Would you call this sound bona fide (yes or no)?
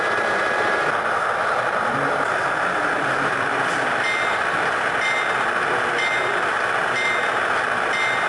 yes